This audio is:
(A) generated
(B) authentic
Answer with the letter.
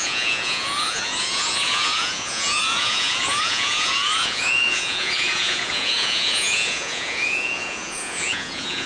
A